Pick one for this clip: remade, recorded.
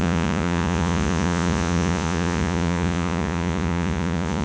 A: remade